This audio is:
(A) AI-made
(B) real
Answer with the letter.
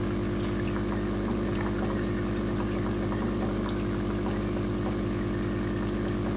B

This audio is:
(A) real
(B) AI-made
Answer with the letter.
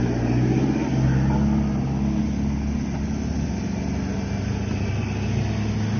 A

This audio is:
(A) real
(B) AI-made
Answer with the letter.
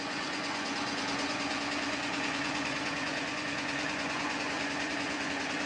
B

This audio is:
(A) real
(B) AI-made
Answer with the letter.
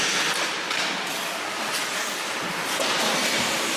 A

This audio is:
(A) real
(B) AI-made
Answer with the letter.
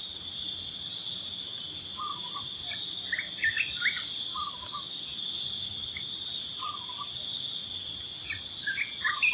A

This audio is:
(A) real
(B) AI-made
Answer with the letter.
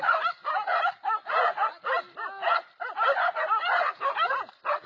A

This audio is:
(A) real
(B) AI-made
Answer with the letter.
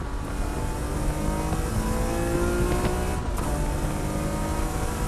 A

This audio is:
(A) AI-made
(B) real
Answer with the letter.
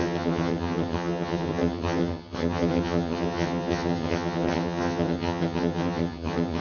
A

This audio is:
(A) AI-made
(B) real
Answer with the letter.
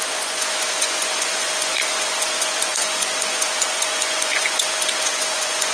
A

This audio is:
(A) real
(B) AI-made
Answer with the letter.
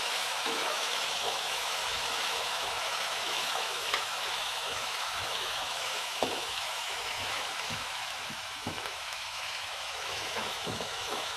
B